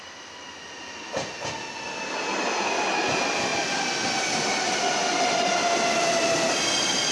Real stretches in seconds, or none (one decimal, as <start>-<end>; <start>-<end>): 0.0-7.1